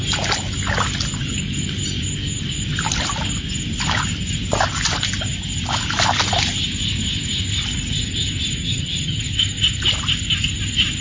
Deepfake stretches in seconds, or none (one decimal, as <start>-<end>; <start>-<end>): 8.6-9.2